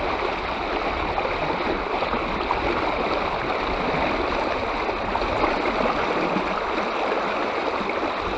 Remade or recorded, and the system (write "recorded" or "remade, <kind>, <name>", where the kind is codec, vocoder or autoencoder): recorded